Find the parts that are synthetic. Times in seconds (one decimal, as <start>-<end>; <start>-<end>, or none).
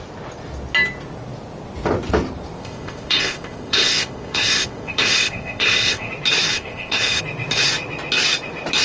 2.6-6.1; 6.5-7.2